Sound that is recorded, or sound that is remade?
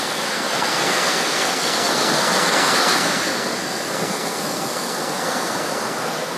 remade